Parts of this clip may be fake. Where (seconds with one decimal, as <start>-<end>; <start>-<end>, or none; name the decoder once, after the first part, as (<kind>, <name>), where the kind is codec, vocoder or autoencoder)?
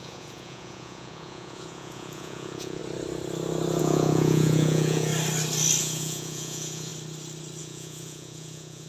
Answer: 0.0-2.8 (vocoder, Vocos); 3.8-5.1; 5.8-6.9; 7.6-8.9